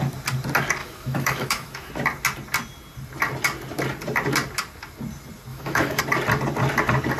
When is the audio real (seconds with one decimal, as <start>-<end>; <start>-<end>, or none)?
0.0-0.8; 1.9-5.5; 6.0-7.2